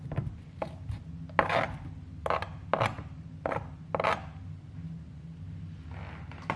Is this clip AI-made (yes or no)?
no